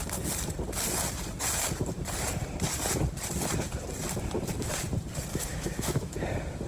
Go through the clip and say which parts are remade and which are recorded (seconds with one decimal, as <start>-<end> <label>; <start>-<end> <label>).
0.0-5.3 recorded; 5.3-6.2 remade; 6.2-6.7 recorded